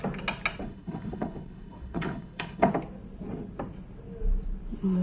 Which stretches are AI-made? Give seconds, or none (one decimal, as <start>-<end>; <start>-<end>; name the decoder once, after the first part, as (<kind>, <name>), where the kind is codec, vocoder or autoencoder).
0.6-2.7 (codec, HILCodec)